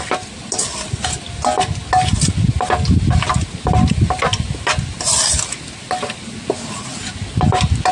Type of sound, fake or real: real